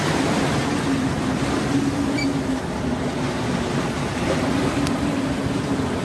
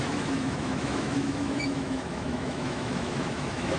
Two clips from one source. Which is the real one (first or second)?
first